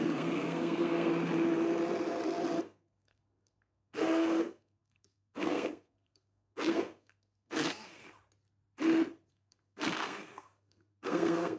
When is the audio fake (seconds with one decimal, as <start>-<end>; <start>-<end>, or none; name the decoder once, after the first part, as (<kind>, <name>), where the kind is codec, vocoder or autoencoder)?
0.0-1.1 (codec, SNAC); 2.6-8.0; 9.3-11.6

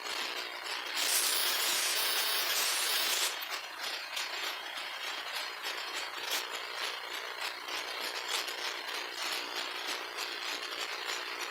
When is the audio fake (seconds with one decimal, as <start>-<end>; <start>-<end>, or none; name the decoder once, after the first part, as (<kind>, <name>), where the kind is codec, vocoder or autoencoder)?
1.4-6.4 (vocoder, Vocos)

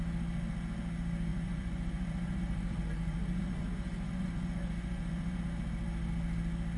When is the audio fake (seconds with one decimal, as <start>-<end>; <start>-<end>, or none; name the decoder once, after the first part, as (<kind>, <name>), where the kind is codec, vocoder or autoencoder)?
1.3-5.4 (vocoder, Vocos)

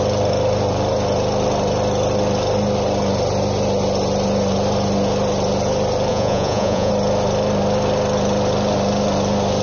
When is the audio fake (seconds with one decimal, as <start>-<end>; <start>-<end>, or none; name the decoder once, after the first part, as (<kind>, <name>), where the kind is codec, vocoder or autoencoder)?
6.1-6.9 (vocoder, Vocos)